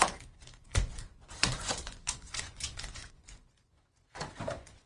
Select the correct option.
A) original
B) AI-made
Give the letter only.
B